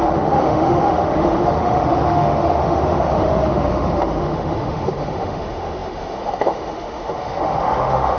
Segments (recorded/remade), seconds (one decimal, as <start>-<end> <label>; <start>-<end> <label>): 0.0-8.2 remade